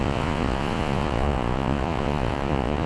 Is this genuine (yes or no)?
no